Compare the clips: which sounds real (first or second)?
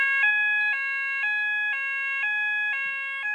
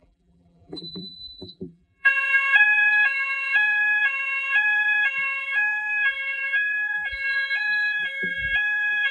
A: first